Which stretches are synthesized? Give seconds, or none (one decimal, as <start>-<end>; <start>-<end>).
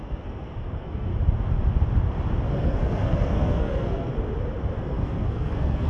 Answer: 0.0-1.1; 2.5-4.1; 4.8-5.9